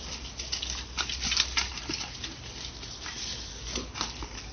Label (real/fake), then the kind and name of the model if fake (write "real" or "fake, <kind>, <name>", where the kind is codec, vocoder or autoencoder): real